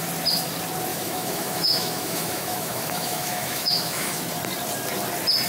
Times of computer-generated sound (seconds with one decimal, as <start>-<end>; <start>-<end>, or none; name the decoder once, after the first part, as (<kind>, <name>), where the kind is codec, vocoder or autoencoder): 0.9-4.2 (autoencoder, DAC-VAE)

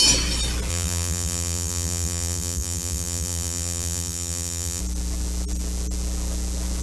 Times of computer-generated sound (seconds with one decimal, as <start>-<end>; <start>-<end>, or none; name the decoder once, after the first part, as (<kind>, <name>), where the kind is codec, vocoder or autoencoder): 0.7-4.8 (vocoder, BigVGAN v2)